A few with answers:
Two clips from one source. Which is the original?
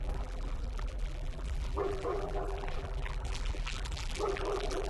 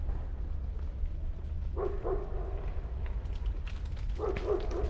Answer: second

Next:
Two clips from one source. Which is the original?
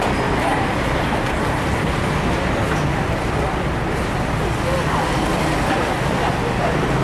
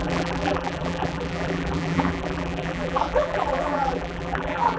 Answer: first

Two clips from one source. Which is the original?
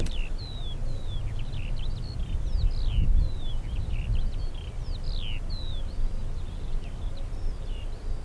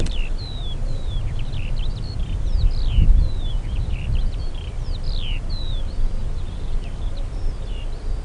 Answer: first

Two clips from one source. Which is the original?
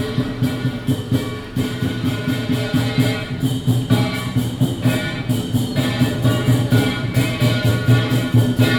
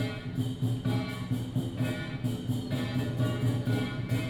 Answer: second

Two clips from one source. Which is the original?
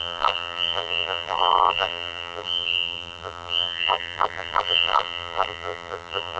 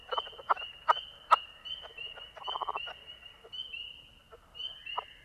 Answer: second